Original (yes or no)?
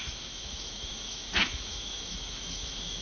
no